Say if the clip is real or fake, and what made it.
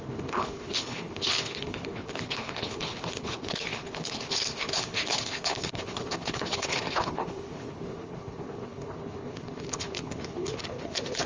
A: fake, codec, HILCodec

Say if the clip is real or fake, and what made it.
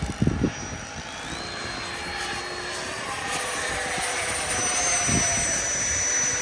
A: real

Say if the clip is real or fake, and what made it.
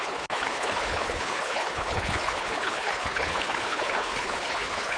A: fake, codec, HILCodec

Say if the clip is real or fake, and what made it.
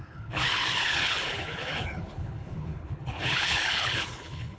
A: fake, codec, HILCodec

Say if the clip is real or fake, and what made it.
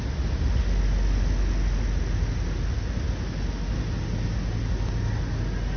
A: real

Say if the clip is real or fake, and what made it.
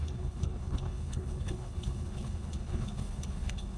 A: fake, codec, HILCodec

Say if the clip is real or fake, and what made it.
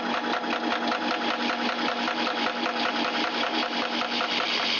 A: real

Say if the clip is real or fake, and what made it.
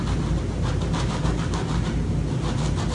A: real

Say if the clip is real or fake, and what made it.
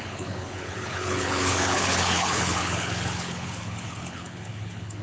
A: fake, codec, HILCodec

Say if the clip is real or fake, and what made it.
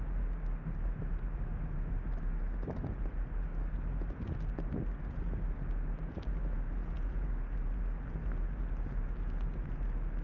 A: real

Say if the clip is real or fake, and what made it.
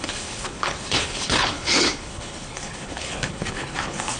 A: fake, codec, HILCodec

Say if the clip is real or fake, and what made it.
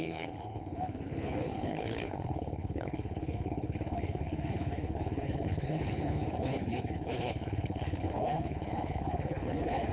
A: fake, codec, HILCodec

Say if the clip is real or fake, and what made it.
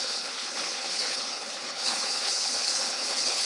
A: fake, codec, HILCodec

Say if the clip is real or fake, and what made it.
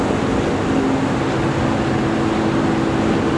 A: real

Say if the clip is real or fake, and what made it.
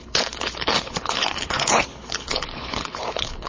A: fake, codec, HILCodec